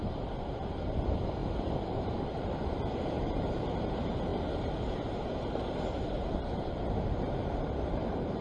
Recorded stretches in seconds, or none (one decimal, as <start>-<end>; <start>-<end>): none